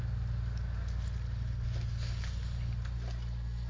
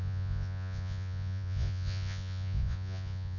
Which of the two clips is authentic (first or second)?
first